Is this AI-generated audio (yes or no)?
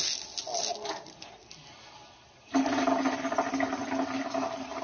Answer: no